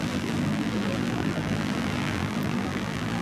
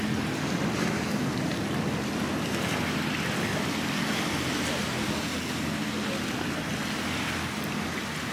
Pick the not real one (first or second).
first